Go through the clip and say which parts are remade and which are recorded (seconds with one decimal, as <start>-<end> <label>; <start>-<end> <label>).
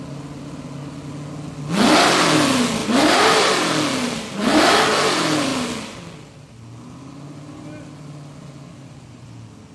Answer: 0.0-2.8 recorded; 2.8-3.5 remade; 3.5-9.7 recorded